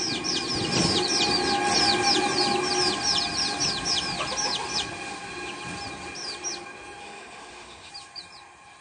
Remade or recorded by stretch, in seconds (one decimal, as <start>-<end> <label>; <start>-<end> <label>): 0.0-7.0 recorded; 7.0-7.9 remade; 7.9-8.8 recorded